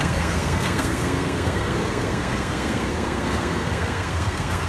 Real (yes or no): no